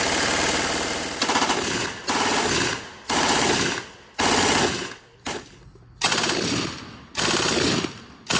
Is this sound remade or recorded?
recorded